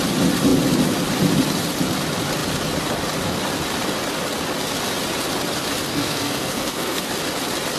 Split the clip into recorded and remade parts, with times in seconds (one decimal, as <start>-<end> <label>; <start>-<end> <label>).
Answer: 0.0-5.9 recorded; 5.9-7.1 remade; 7.1-7.8 recorded